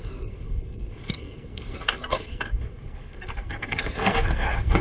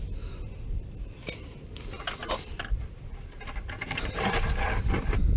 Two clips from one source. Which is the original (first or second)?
second